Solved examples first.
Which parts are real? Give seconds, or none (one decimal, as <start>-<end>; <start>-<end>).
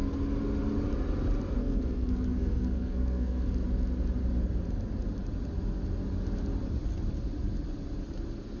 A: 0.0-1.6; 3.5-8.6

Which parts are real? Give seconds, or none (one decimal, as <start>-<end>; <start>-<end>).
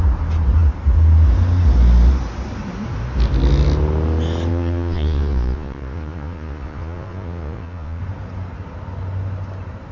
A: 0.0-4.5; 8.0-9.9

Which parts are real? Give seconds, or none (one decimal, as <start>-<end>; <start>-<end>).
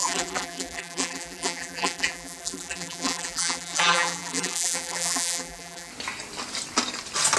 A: 5.9-7.4